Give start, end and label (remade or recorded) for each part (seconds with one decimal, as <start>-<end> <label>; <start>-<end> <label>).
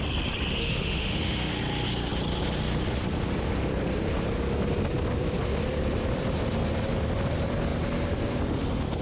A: 0.0-0.6 recorded; 0.6-1.5 remade; 1.5-9.0 recorded